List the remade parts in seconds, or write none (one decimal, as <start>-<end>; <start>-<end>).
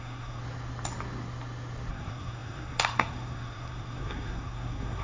0.0-0.4; 1.9-5.0